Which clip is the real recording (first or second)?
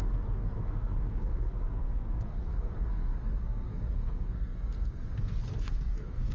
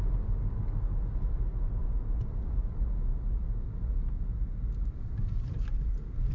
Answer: second